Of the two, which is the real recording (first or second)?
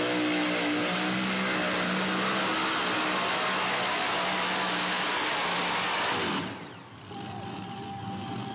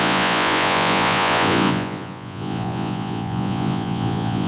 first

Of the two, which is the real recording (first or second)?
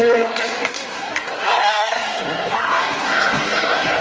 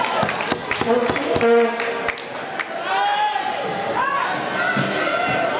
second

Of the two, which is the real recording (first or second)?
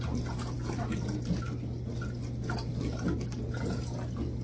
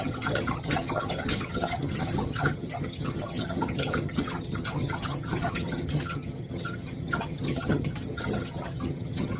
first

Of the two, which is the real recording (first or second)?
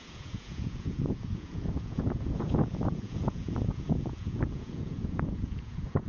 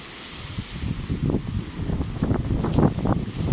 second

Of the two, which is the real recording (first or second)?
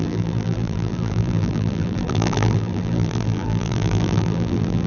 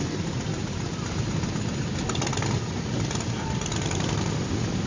second